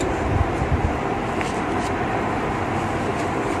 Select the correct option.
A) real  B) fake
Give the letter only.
A